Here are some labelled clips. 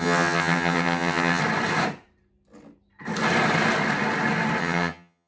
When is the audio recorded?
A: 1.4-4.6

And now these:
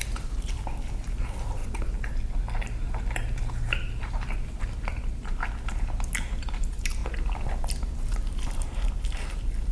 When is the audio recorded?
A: 1.6-2.8; 7.0-7.8

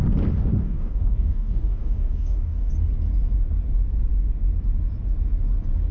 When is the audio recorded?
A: 0.0-0.6; 2.7-5.9

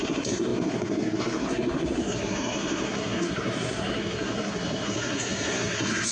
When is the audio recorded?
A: none

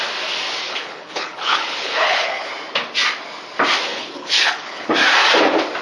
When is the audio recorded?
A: 0.0-0.6; 2.5-3.9; 4.9-5.8